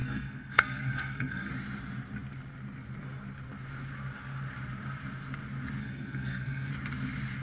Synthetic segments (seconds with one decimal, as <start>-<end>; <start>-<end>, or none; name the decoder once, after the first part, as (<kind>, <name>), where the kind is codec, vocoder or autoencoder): 0.0-1.5 (codec, SNAC); 5.8-6.7